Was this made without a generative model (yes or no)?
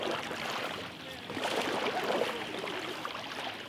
yes